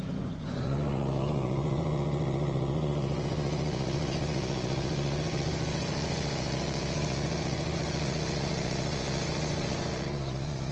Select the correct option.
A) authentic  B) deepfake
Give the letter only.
B